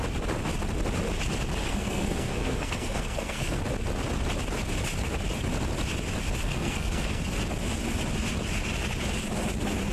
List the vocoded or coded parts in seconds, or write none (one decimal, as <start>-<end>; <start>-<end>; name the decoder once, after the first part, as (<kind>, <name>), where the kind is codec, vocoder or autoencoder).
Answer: 1.6-3.6 (codec, SNAC); 6.4-7.2